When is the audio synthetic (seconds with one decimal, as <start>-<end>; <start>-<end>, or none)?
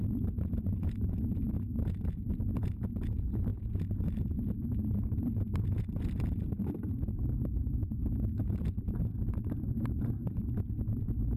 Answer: none